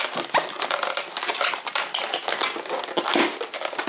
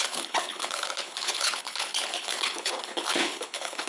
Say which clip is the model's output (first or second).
second